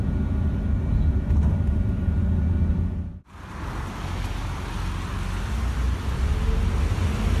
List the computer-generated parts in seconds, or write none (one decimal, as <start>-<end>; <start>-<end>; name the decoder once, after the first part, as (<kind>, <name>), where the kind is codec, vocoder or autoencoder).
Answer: none